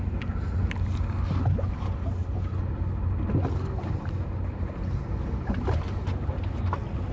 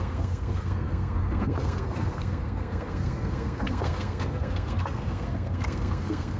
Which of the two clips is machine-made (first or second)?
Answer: second